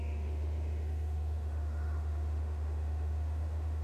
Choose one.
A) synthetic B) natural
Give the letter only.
A